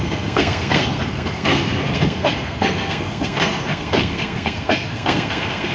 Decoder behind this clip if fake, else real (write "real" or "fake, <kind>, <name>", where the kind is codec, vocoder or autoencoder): fake, codec, SNAC